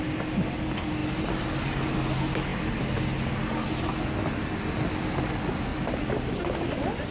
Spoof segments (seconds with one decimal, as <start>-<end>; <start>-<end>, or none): none